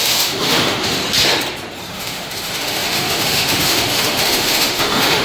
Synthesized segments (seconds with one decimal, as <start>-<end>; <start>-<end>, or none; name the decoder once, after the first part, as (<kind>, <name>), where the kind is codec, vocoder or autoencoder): 0.0-1.0 (autoencoder, DAC-VAE); 1.9-5.2